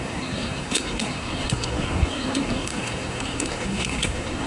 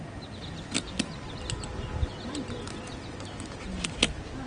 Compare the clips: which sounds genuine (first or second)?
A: second